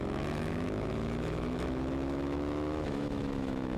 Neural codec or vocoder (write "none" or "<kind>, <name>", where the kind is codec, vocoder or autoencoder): autoencoder, DAC-VAE